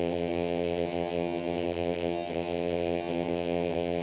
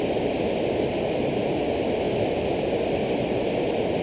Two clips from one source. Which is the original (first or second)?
second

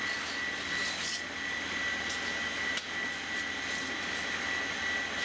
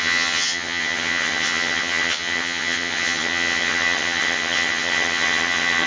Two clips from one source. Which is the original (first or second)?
first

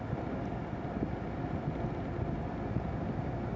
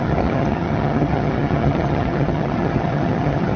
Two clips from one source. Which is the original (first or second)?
first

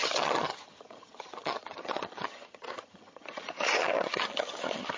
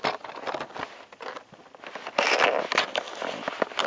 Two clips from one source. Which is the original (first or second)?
second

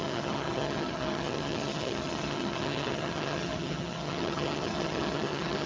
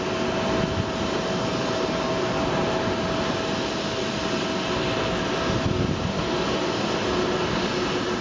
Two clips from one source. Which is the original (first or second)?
second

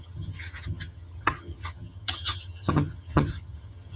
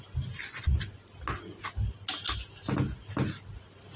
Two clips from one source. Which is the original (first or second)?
second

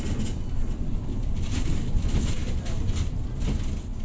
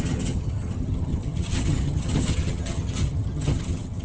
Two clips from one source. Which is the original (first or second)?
first